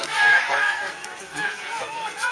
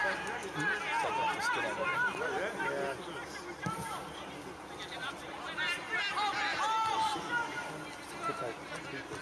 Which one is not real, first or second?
first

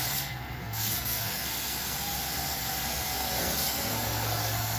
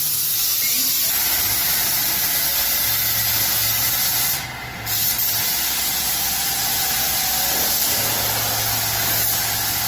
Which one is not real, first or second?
first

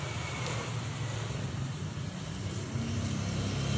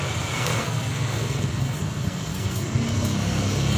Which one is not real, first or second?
second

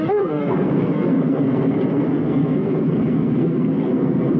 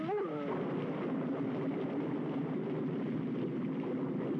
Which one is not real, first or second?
first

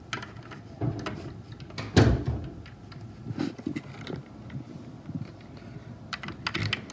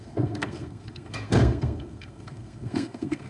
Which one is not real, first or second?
second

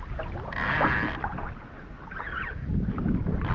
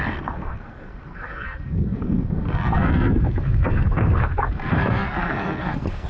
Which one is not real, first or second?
second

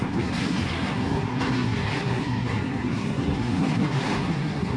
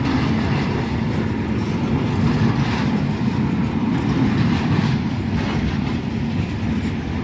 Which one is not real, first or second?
first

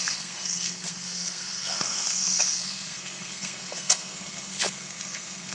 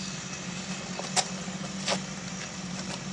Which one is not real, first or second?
first